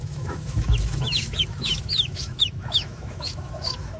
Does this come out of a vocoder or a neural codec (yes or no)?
yes